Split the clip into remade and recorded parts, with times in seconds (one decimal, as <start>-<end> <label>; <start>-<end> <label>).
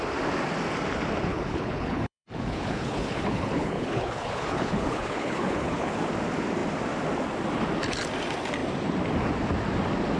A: 0.0-1.3 recorded; 1.3-6.1 remade; 6.1-10.2 recorded